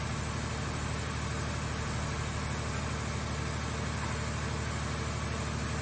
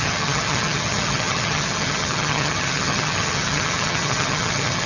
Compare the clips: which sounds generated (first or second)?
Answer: second